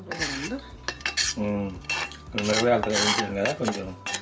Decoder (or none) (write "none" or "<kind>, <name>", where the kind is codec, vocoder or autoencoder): none